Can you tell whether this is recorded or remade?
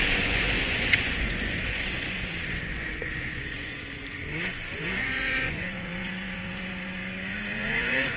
remade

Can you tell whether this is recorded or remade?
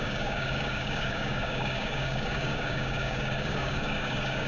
remade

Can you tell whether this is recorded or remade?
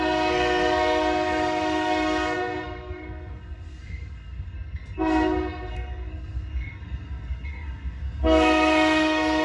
remade